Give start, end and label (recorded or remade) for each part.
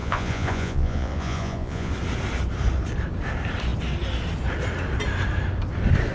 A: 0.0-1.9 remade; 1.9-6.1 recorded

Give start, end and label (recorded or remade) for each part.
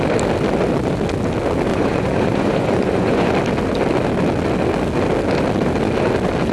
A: 0.0-1.7 recorded; 1.7-3.3 remade; 3.3-6.5 recorded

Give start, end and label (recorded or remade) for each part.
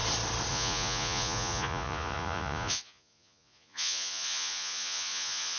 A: 0.0-0.5 recorded; 0.5-5.6 remade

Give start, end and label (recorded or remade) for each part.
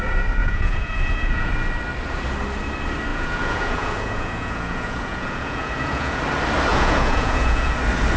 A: 0.0-0.4 recorded; 0.4-1.5 remade; 1.5-3.1 recorded; 3.1-6.2 remade; 6.2-6.7 recorded; 6.7-7.7 remade; 7.7-8.2 recorded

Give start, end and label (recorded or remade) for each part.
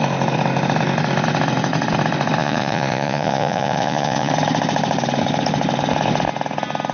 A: 0.0-2.4 recorded; 2.4-4.3 remade; 4.3-6.9 recorded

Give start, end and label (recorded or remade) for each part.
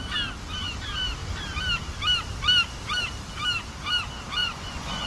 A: 0.0-4.4 recorded; 4.4-5.1 remade